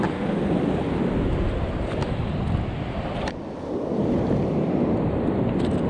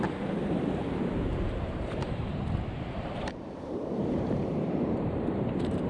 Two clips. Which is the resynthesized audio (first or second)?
second